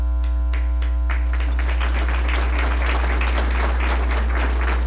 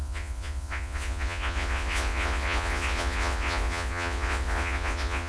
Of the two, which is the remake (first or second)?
second